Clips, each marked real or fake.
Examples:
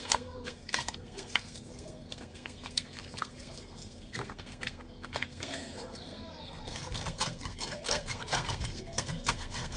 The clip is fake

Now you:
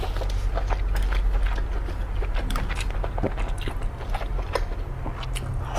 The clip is real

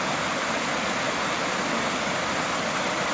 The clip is real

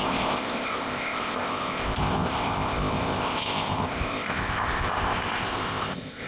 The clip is fake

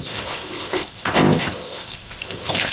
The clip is fake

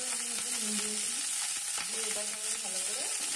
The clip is real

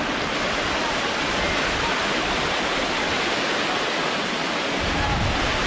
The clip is real